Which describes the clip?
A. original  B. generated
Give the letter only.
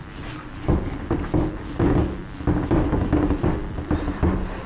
A